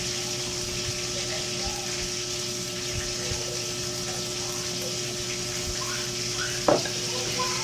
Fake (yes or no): no